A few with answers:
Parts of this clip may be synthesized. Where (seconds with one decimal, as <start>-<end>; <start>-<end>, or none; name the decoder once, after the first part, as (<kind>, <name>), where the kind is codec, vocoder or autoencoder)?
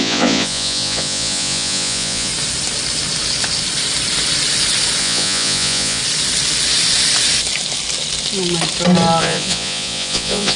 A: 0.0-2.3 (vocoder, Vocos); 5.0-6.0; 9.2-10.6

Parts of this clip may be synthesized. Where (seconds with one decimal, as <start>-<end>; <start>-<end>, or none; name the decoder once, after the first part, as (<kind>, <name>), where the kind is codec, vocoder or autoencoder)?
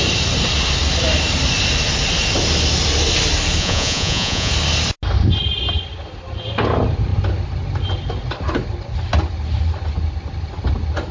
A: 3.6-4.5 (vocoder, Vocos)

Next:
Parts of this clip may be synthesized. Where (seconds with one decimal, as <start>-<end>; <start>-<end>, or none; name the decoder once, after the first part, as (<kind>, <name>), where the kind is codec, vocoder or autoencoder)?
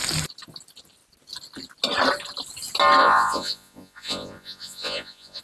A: 3.0-5.4 (vocoder, Vocos)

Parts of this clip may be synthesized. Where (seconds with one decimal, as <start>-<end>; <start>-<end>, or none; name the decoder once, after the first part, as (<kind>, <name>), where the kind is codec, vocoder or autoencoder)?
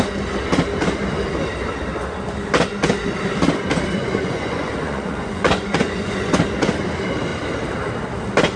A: 4.0-6.4 (vocoder, Vocos)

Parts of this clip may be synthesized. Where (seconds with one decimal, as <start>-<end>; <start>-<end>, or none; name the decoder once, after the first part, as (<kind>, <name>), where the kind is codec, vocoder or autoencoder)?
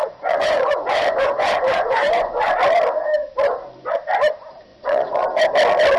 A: 0.0-2.5 (vocoder, Vocos); 4.7-5.4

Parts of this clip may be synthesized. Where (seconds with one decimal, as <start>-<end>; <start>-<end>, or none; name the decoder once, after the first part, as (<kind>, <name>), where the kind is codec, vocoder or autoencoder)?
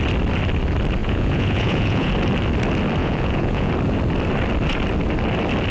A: 1.0-2.1 (vocoder, Vocos); 3.0-3.7